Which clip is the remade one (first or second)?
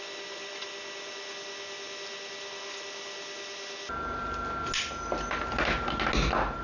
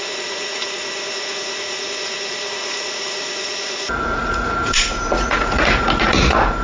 second